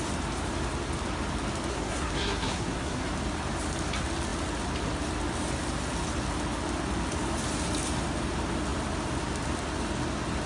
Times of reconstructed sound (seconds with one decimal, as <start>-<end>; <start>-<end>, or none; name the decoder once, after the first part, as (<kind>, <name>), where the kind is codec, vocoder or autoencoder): 1.7-3.0 (codec, SNAC)